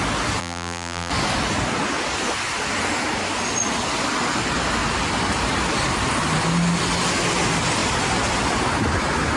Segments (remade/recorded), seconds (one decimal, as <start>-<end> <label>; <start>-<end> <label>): 0.0-0.4 recorded; 0.4-1.1 remade; 1.1-9.4 recorded